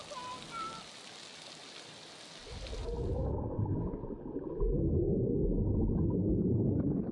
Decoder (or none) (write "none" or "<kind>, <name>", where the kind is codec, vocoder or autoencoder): none